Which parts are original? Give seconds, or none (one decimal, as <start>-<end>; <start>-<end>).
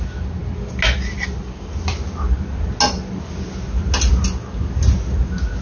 0.0-5.6